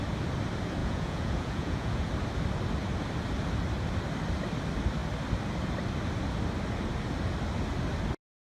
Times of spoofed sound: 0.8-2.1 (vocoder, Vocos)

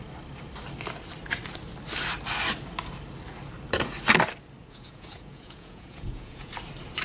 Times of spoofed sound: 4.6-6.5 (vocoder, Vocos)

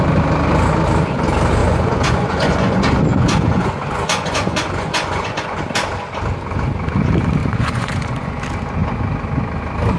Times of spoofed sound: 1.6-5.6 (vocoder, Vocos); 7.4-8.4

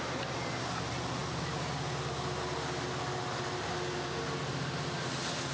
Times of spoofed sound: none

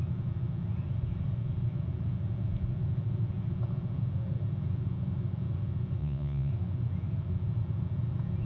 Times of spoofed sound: 6.0-6.5 (vocoder, Vocos)

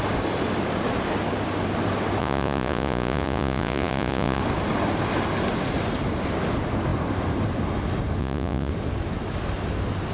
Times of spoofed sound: 2.2-4.4 (vocoder, Vocos); 8.2-8.7

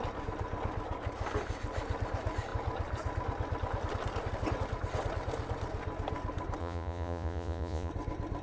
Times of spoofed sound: 6.6-7.9 (vocoder, Vocos)

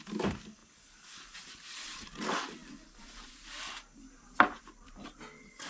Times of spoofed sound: none